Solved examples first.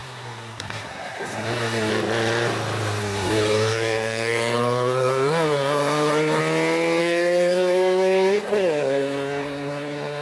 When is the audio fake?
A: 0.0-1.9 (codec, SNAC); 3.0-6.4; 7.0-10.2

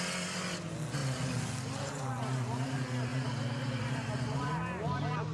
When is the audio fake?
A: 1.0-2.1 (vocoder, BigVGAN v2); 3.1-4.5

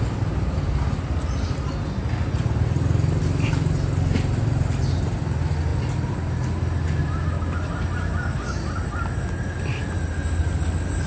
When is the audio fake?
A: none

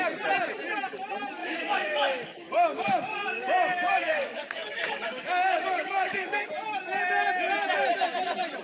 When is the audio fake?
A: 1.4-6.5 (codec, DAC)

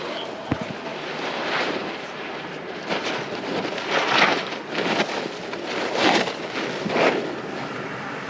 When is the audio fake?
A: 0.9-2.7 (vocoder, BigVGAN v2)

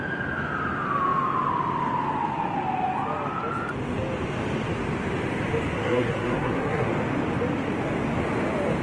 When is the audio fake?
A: 5.7-6.9 (codec, SNAC)

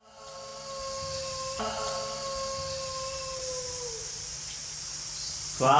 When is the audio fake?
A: none